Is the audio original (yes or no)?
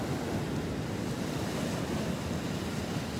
yes